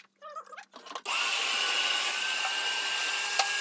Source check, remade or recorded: recorded